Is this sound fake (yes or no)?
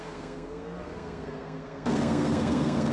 yes